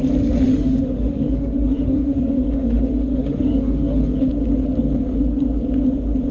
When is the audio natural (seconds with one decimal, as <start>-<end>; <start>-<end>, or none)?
0.0-0.5; 4.3-6.3